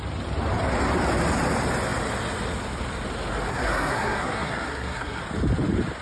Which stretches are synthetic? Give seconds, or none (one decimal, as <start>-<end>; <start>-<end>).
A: 3.5-5.2